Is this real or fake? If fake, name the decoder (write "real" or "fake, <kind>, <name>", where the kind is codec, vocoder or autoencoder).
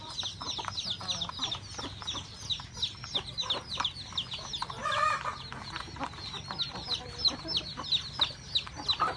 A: real